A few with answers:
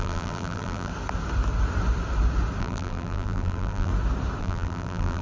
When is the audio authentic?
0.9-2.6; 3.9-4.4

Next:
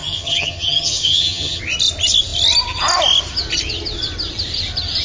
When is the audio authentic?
1.6-5.0

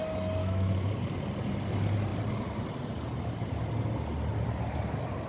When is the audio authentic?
0.0-0.4; 0.9-5.3